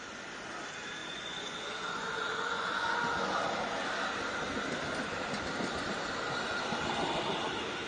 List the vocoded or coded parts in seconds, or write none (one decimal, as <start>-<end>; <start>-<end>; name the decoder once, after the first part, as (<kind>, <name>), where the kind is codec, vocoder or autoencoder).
1.0-3.0 (vocoder, Vocos)